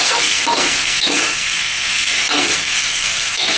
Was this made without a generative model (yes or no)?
no